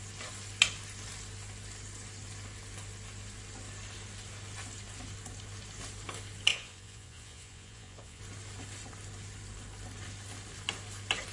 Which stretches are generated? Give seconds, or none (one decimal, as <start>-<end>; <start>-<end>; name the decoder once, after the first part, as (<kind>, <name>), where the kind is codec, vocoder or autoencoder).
6.5-8.2 (vocoder, Vocos)